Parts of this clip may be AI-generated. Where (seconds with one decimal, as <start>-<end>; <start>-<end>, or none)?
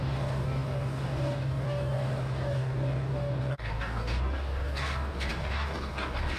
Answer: 0.0-6.4